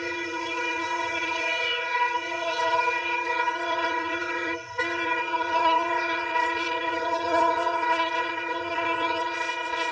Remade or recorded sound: remade